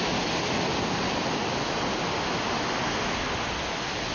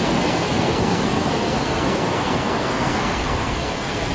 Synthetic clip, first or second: second